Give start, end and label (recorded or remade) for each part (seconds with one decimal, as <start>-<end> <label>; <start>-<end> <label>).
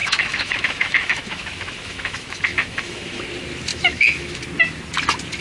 0.0-3.2 remade; 3.2-3.7 recorded; 3.7-4.4 remade; 4.4-5.4 recorded